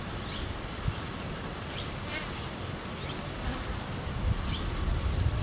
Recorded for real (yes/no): yes